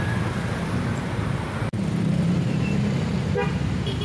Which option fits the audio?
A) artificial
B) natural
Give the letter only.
A